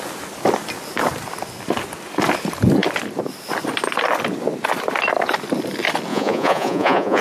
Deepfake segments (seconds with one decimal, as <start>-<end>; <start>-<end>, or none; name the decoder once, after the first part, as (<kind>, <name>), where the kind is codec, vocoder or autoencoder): 6.1-7.2 (vocoder, Vocos)